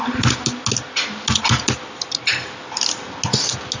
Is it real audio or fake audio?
real